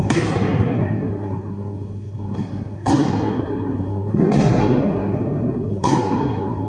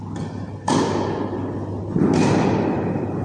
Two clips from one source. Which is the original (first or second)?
second